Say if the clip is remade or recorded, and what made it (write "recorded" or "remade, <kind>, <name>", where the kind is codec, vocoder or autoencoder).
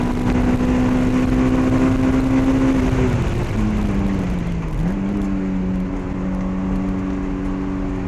recorded